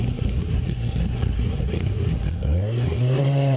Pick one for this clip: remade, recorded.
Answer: remade